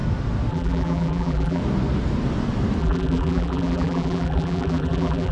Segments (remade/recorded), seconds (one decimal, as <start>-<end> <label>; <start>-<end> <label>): 0.0-0.5 recorded; 0.5-1.6 remade; 1.6-2.8 recorded; 2.8-5.3 remade